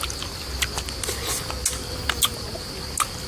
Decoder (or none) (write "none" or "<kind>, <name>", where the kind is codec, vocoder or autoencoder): none